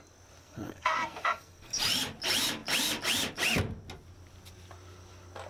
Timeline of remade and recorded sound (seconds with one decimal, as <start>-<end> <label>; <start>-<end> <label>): 0.0-0.4 recorded; 0.4-1.8 remade; 1.8-5.5 recorded